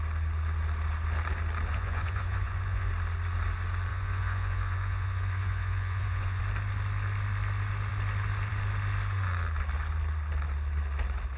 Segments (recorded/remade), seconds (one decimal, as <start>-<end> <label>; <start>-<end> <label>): 0.0-1.7 recorded; 1.7-2.9 remade; 2.9-3.9 recorded; 3.9-6.4 remade; 6.4-11.4 recorded